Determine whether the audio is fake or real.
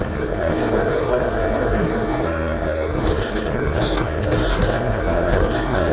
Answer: fake